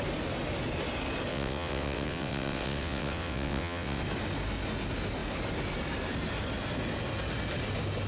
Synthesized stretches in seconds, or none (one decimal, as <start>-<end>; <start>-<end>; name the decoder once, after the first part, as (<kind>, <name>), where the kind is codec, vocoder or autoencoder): 1.3-4.0 (vocoder, WaveNeXt)